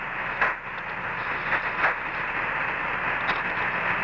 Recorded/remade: recorded